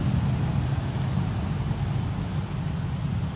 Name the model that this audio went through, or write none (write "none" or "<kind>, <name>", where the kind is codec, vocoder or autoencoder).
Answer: none